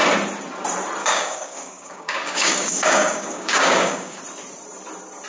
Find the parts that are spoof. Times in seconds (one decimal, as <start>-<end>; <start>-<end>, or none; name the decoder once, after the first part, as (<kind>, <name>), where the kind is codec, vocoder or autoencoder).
1.0-4.2 (codec, DAC)